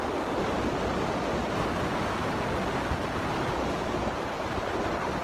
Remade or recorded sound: recorded